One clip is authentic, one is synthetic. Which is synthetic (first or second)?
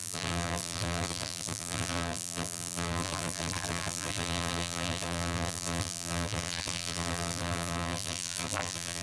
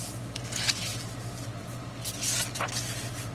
first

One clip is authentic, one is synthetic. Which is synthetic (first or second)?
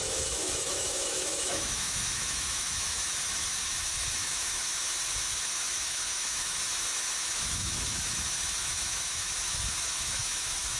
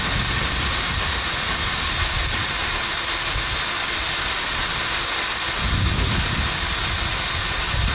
first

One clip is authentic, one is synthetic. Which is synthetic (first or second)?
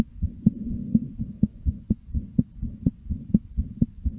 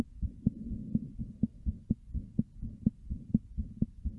first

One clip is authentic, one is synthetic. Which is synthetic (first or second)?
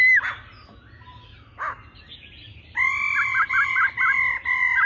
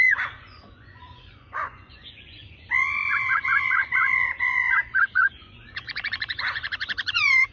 second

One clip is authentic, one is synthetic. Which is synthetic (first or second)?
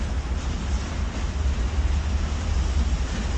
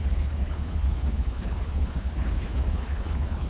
second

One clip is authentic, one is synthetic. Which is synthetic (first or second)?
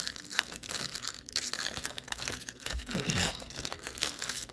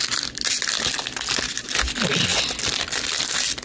first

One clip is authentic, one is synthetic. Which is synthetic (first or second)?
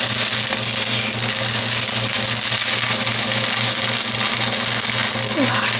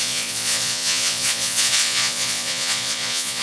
second